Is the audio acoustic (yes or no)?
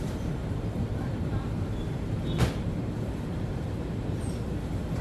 no